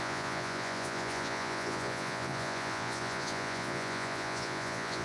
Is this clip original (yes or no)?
no